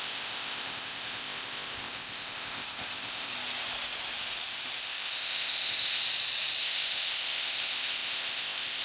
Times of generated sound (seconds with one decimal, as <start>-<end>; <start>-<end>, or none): 0.0-3.3; 4.8-6.0; 6.6-8.8

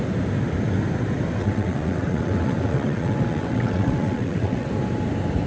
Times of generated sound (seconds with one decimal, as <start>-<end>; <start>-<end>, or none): 1.4-4.7

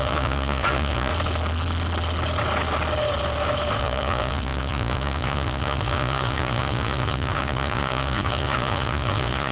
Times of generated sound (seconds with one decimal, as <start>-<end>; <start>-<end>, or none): 0.0-1.1; 3.8-9.5

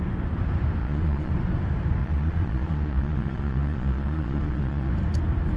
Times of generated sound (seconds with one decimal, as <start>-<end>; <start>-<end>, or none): 0.8-1.3; 2.0-4.9

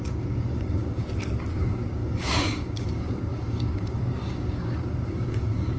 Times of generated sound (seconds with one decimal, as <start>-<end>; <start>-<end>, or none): 0.0-1.0; 1.6-5.8

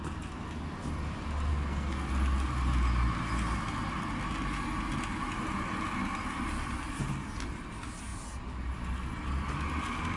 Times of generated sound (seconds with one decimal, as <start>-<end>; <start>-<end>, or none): 1.5-2.1

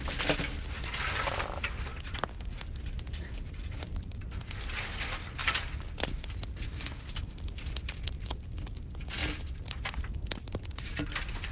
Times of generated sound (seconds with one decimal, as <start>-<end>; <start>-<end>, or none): none

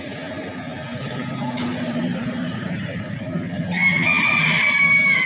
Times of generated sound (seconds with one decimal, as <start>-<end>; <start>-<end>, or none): 1.7-3.2